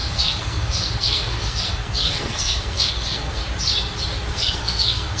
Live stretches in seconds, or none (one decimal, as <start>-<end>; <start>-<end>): 3.4-4.3